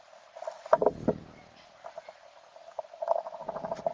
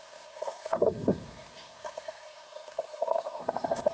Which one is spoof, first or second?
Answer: second